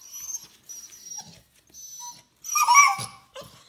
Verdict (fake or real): real